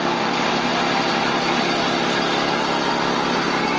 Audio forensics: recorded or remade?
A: recorded